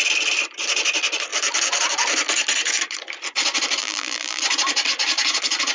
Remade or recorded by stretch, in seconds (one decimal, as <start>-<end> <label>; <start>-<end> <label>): 0.0-3.8 recorded; 3.8-4.4 remade; 4.4-5.7 recorded